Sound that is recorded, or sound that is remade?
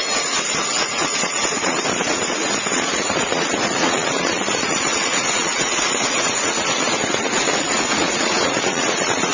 remade